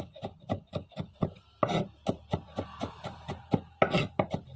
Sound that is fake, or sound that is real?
real